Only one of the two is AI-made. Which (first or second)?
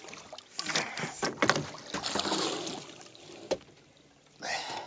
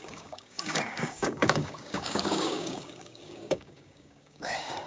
second